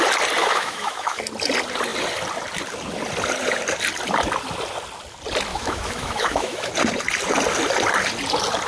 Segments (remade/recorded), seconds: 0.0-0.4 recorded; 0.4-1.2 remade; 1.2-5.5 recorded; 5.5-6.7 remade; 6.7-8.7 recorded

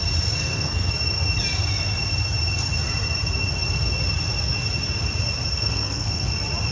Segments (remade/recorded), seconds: 0.0-0.4 recorded; 0.4-0.9 remade; 0.9-5.5 recorded; 5.5-6.3 remade; 6.3-6.7 recorded

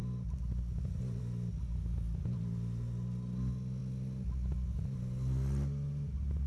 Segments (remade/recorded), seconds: 0.0-6.5 recorded

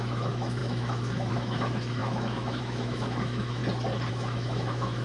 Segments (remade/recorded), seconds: 0.0-3.6 remade; 3.6-4.1 recorded; 4.1-5.0 remade

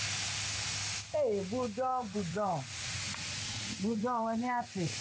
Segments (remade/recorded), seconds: 0.0-1.9 recorded; 1.9-5.0 remade

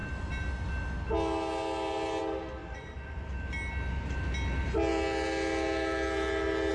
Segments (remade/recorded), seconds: 0.0-2.6 recorded; 2.6-3.3 remade; 3.3-6.7 recorded